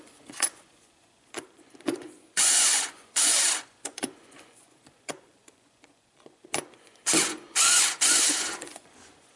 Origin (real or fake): fake